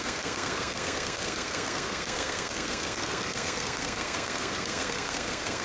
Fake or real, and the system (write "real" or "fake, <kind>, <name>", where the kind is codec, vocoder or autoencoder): fake, codec, SNAC